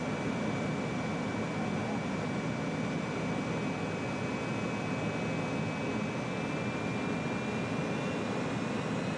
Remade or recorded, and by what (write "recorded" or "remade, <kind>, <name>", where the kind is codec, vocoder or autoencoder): recorded